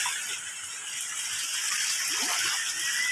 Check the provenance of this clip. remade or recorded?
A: recorded